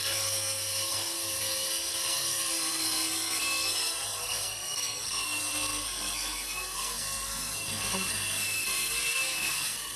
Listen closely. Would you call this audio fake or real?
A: fake